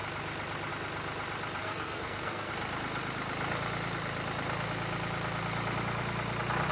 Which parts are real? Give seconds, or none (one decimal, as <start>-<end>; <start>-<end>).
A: 0.0-1.6; 2.5-6.7